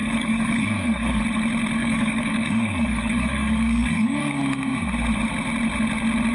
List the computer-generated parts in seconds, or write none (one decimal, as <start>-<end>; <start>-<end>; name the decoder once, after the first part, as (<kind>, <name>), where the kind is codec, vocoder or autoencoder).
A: 0.0-1.2 (codec, DAC); 1.8-4.4